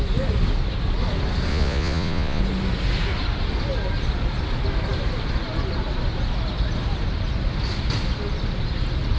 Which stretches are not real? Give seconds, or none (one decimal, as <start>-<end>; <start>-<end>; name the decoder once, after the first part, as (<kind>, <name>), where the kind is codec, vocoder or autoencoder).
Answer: 1.5-2.4 (vocoder, Vocos)